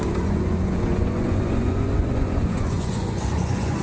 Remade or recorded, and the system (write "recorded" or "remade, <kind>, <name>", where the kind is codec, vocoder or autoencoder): remade, vocoder, Vocos